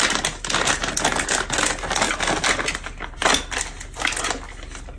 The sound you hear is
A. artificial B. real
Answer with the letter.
B